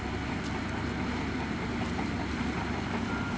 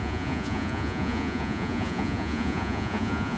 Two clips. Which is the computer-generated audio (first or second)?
second